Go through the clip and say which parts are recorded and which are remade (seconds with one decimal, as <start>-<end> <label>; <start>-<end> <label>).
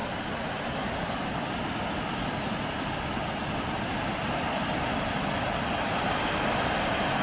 0.0-7.2 recorded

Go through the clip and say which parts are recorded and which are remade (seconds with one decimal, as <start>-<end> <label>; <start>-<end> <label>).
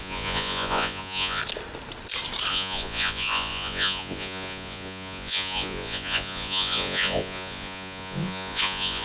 0.0-1.4 remade; 1.4-2.5 recorded; 2.5-9.0 remade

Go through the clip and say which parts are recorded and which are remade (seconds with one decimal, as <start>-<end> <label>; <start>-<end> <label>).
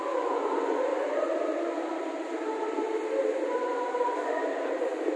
0.0-0.9 remade; 0.9-4.0 recorded; 4.0-4.4 remade; 4.4-5.2 recorded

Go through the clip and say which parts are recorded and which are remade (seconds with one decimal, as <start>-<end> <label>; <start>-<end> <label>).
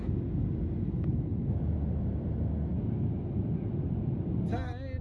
0.0-5.0 recorded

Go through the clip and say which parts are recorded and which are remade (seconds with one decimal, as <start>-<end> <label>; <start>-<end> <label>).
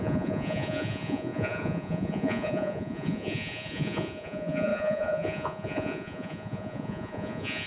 0.0-7.7 remade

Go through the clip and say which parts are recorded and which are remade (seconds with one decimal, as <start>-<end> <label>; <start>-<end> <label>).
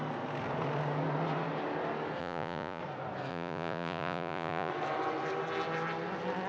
0.0-2.2 recorded; 2.2-2.8 remade; 2.8-3.3 recorded; 3.3-4.7 remade; 4.7-6.5 recorded